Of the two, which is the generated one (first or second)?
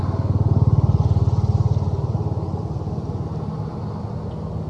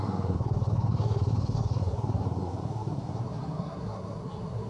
second